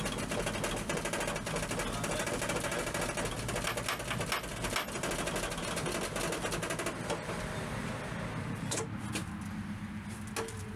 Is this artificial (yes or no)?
no